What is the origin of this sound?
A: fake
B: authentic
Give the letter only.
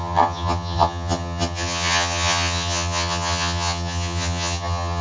A